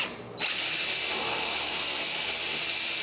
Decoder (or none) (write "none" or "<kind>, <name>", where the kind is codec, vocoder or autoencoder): none